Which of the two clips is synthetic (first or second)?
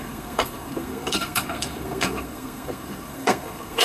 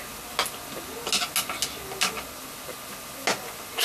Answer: first